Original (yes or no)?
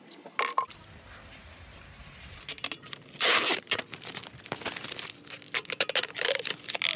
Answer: yes